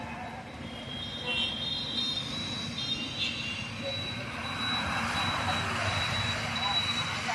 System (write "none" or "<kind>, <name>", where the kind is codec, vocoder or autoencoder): none